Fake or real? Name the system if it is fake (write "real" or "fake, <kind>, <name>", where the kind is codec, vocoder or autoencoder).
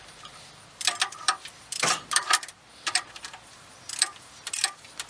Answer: fake, vocoder, BigVGAN v2